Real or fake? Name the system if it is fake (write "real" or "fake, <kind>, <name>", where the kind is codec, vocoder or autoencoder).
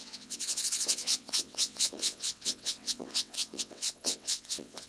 fake, vocoder, WaveNeXt